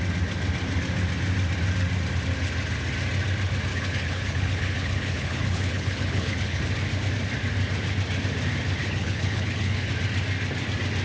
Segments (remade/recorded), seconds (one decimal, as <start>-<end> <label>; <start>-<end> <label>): 0.0-3.7 recorded; 3.7-6.6 remade; 6.6-8.8 recorded; 8.8-9.9 remade; 9.9-11.0 recorded